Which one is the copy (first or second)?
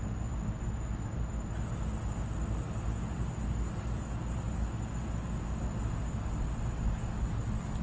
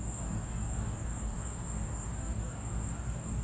second